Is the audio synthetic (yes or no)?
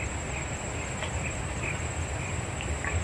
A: no